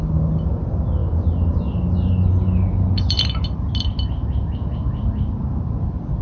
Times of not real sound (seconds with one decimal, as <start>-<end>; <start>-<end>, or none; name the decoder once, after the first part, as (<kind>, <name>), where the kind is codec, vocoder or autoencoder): none